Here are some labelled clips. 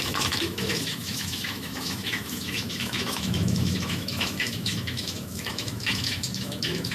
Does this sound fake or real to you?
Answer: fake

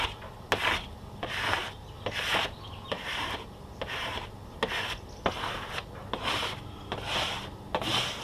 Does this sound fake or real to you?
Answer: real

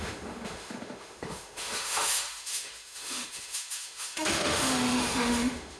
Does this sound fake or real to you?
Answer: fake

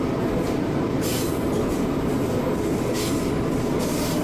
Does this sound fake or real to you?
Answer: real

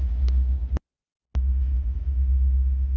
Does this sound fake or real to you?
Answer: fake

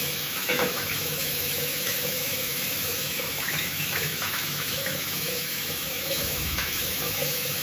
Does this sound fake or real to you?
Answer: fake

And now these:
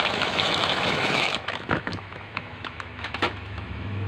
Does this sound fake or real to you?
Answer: fake